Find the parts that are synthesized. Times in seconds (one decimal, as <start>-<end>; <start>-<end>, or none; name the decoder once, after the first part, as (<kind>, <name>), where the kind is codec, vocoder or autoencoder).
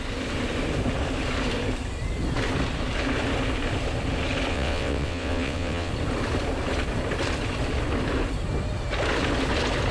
4.5-5.9 (vocoder, WaveNeXt)